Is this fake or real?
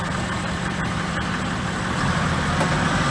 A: real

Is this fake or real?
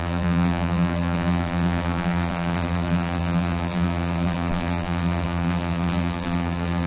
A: fake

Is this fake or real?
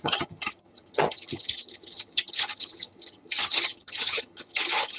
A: fake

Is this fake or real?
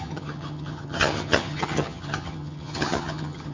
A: fake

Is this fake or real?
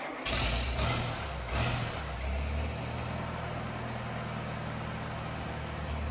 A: real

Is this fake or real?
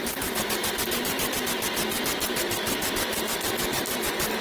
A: real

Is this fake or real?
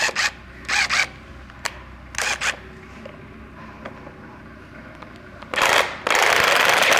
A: real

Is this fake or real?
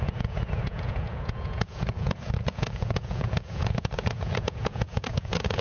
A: fake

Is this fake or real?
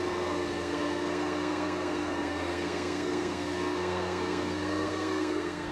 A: fake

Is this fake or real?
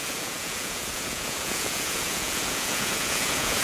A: fake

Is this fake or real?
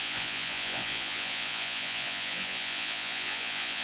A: fake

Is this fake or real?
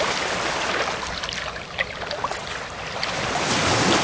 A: real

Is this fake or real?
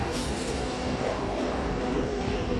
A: fake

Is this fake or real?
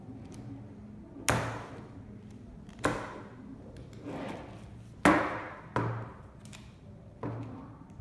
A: real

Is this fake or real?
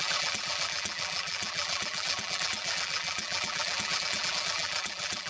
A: fake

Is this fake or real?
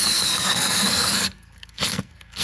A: fake